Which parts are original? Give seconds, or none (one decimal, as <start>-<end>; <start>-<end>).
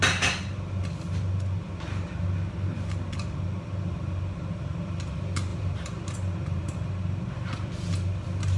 0.0-5.5; 6.9-8.6